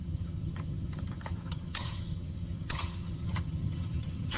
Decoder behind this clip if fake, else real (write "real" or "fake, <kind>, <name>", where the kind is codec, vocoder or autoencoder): fake, vocoder, HiFi-GAN